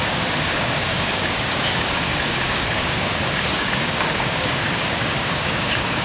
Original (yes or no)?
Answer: no